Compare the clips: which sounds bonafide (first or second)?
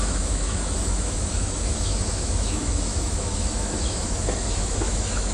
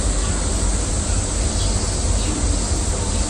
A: second